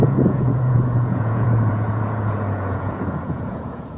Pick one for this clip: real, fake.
fake